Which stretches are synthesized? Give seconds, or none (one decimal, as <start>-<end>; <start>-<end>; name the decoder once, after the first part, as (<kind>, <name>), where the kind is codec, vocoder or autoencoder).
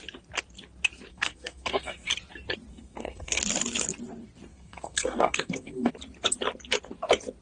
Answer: 1.1-2.1 (codec, SNAC); 2.7-3.4; 4.5-5.9